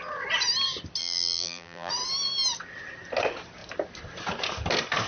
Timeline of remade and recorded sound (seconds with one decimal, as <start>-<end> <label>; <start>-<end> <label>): 0.0-1.0 recorded; 1.0-1.9 remade; 1.9-5.1 recorded